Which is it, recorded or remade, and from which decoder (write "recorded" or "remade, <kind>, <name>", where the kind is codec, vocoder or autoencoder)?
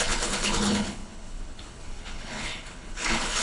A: remade, codec, HILCodec